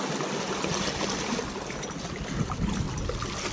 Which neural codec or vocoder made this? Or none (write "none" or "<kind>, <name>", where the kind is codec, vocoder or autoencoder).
none